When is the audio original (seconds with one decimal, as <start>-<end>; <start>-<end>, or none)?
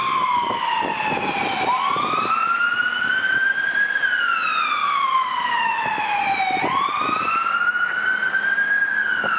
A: 0.0-4.8; 6.2-9.4